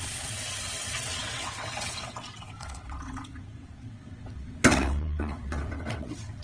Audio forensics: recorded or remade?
remade